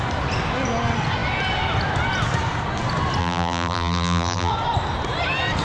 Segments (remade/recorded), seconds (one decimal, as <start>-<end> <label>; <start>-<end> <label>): 0.0-3.2 recorded; 3.2-4.5 remade; 4.5-5.6 recorded